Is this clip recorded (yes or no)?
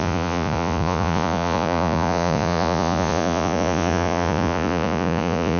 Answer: no